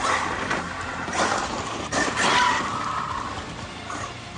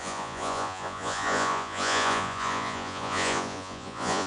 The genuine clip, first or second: first